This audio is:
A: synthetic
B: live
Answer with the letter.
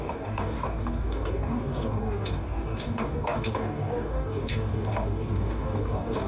A